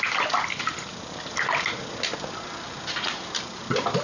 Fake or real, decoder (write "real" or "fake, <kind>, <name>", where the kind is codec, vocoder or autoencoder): real